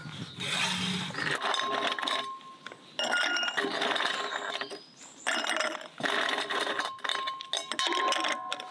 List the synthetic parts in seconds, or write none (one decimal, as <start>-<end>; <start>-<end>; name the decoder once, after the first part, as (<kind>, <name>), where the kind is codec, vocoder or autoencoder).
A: none